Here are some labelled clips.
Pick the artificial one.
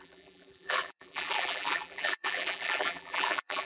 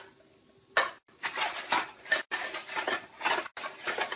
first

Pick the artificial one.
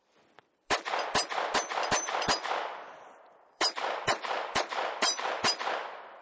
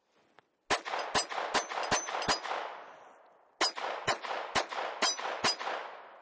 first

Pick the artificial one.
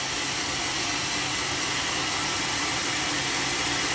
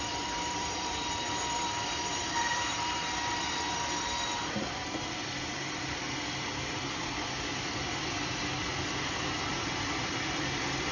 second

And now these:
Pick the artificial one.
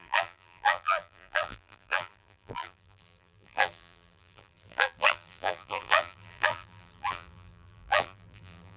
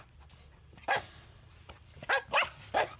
first